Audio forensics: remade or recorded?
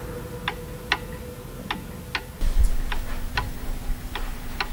recorded